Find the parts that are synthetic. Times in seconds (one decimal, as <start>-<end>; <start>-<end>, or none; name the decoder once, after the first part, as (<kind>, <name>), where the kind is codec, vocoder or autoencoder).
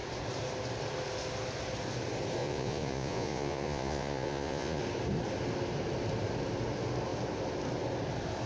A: 2.4-4.8 (vocoder, Vocos)